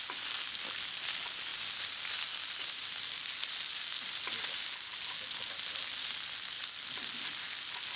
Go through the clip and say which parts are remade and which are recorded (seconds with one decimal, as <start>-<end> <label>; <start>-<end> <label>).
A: 0.0-8.0 recorded

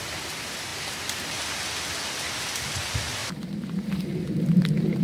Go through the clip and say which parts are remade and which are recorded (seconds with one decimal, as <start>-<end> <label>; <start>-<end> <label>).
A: 0.0-5.0 recorded

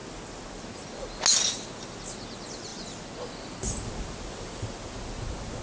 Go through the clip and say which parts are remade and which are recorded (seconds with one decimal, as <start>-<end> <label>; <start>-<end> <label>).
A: 0.0-5.6 recorded

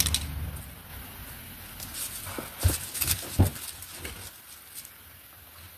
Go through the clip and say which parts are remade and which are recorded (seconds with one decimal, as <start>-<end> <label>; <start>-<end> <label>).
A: 0.0-5.8 recorded

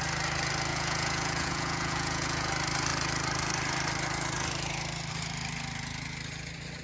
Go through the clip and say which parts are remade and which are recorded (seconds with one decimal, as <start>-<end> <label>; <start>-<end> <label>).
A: 0.0-0.7 recorded; 0.7-2.5 remade; 2.5-6.8 recorded

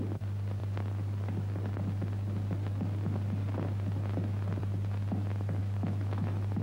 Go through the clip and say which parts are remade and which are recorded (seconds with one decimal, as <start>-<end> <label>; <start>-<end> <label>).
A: 0.0-5.6 recorded; 5.6-6.6 remade